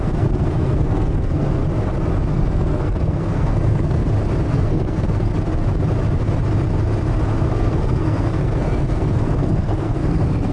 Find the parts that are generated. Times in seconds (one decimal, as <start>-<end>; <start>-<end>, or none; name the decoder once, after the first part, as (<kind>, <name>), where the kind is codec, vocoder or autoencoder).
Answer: 0.0-1.6 (codec, SNAC); 2.3-4.0; 4.5-5.3; 7.4-10.5